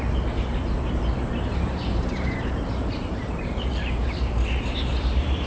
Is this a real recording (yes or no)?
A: no